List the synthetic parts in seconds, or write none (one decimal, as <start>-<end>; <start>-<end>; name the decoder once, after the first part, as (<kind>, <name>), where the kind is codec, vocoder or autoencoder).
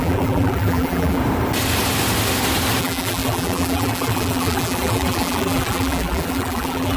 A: 0.0-1.2 (vocoder, BigVGAN v2); 2.8-7.0